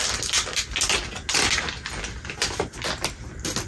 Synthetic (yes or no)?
no